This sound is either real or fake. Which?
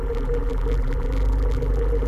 fake